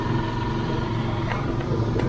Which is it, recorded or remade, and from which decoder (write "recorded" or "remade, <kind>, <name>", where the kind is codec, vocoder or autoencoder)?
remade, vocoder, BigVGAN v2